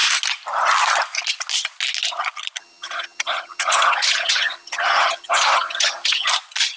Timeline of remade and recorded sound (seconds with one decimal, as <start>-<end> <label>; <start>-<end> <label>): 0.0-2.6 recorded; 2.6-6.3 remade; 6.3-6.8 recorded